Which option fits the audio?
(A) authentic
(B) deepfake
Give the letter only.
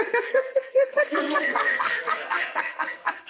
B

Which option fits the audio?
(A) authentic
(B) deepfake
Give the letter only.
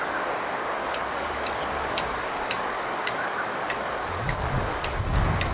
B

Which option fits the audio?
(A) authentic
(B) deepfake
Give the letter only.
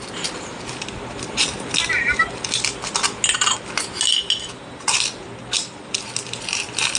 A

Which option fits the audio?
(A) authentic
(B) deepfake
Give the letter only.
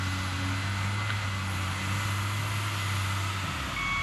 A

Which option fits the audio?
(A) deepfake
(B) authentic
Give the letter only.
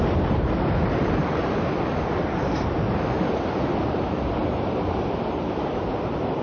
A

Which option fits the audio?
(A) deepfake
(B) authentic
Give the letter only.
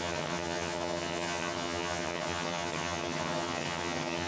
A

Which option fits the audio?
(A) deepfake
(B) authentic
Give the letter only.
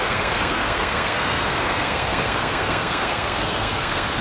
A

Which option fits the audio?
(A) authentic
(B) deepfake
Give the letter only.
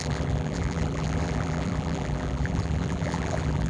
B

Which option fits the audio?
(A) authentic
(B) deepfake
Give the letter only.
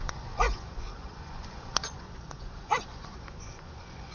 B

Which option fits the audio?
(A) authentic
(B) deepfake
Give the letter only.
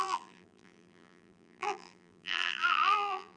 B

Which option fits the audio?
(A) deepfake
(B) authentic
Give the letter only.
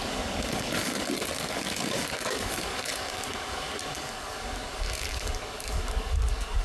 A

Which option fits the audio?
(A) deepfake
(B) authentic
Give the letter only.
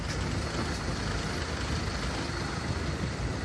B